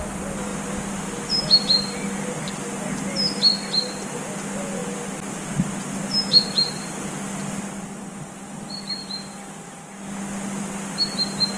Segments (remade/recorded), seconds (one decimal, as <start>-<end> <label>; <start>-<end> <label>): 0.0-11.6 recorded